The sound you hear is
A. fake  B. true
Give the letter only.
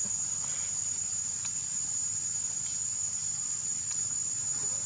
B